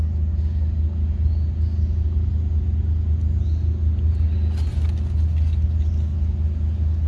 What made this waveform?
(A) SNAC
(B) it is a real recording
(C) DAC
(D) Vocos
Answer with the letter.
B